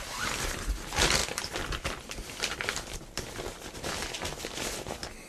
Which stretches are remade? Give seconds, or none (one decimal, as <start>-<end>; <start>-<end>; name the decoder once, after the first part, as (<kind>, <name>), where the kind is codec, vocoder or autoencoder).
none